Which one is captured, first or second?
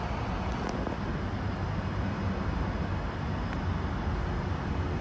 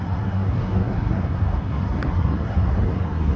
first